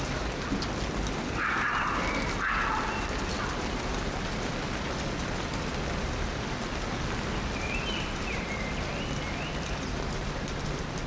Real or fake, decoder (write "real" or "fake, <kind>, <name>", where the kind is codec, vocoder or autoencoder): real